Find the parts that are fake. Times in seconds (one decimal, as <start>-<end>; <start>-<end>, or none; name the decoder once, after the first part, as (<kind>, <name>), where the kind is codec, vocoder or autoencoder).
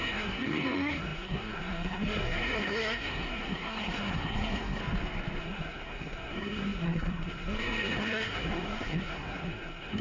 0.0-4.8 (codec, SNAC); 5.4-10.0